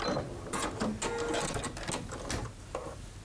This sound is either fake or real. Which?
real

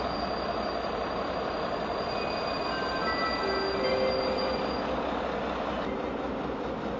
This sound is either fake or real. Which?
real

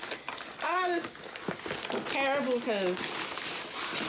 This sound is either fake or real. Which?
real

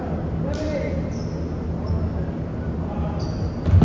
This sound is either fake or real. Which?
real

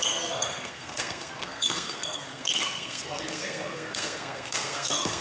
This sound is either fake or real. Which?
fake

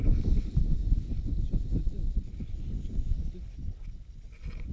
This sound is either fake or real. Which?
real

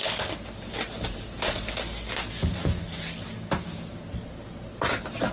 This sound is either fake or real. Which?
real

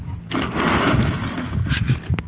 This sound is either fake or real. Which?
real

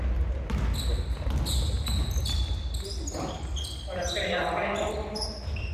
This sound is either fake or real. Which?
real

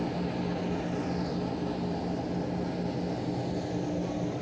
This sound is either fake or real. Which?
real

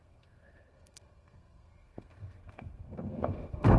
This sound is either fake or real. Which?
fake